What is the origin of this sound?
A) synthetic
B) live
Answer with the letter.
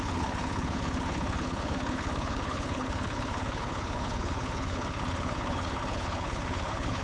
A